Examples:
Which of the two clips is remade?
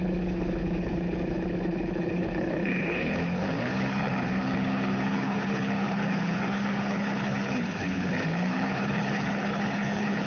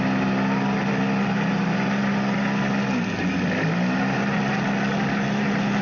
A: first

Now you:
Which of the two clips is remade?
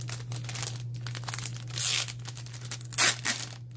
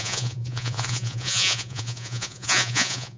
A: second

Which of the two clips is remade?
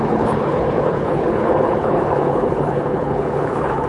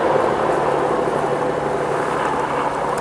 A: first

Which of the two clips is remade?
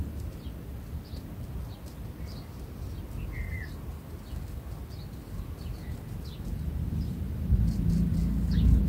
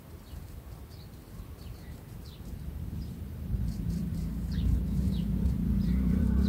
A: second